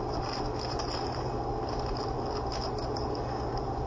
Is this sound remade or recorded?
recorded